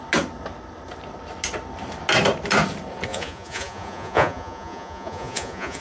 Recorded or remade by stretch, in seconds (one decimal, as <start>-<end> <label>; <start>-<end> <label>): 0.0-3.1 recorded; 3.1-5.8 remade